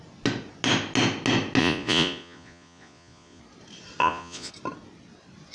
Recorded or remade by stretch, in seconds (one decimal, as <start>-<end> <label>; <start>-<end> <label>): 0.0-1.6 recorded; 1.6-3.4 remade; 3.4-4.0 recorded; 4.0-4.5 remade; 4.5-5.5 recorded